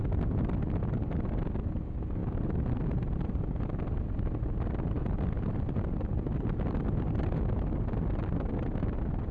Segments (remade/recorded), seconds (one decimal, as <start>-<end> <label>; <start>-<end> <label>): 0.0-9.3 recorded